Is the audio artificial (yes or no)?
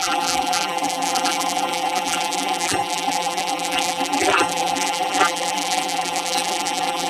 yes